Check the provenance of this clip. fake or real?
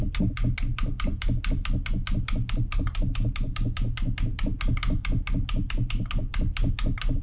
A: real